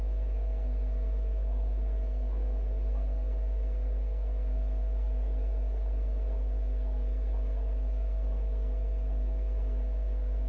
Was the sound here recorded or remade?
remade